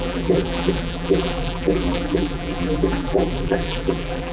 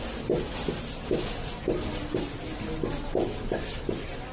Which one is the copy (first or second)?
first